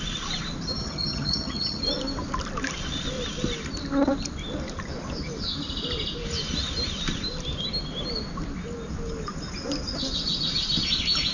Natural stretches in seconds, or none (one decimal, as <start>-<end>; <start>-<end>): 0.0-0.8; 1.8-11.3